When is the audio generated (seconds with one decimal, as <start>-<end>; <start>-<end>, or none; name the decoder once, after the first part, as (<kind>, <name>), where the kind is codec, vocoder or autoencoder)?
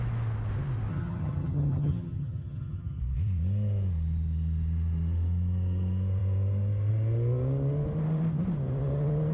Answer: 0.9-3.0 (vocoder, HiFi-GAN)